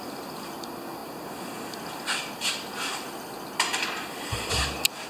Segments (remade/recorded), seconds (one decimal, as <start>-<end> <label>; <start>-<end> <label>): 0.0-5.1 recorded